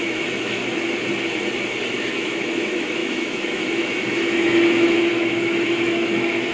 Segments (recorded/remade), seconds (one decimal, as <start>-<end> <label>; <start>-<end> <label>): 0.0-0.6 remade; 0.6-1.9 recorded; 1.9-6.5 remade